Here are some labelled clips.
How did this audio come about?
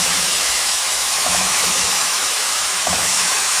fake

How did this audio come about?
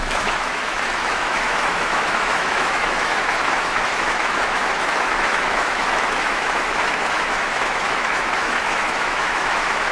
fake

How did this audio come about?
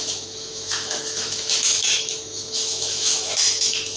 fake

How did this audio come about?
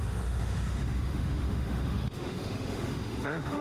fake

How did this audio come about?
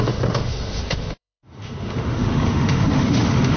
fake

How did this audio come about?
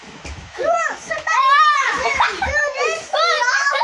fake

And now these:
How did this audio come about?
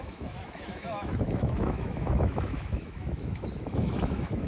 fake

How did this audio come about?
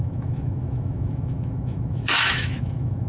fake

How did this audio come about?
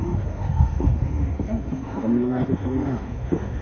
fake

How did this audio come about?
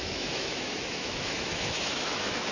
fake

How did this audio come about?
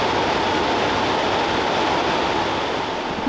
real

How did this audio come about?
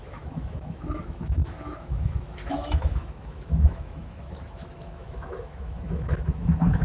fake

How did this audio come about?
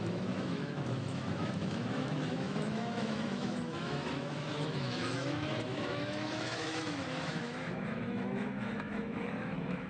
fake